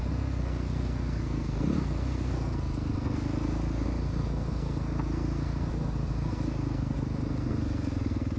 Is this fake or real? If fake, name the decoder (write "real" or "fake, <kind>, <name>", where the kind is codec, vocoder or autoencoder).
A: fake, codec, SNAC